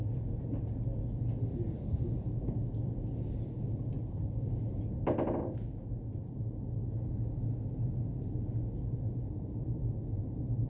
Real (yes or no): yes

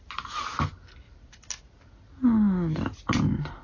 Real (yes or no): yes